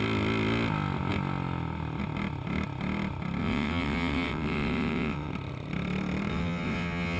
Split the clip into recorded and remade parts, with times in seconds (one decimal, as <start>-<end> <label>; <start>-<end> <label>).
0.0-3.4 recorded; 3.4-5.3 remade; 5.3-6.3 recorded; 6.3-7.2 remade